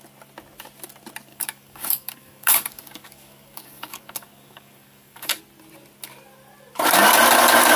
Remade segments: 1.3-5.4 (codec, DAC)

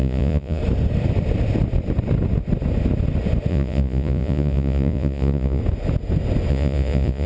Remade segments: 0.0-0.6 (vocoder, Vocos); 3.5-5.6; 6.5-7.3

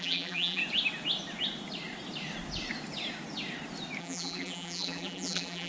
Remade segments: 0.0-0.6 (vocoder, BigVGAN v2); 4.0-5.7

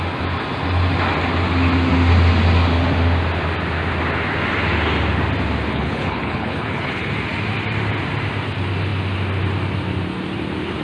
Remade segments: 5.7-7.1 (codec, HILCodec)